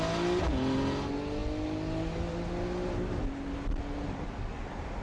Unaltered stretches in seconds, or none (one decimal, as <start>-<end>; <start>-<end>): 0.0-5.0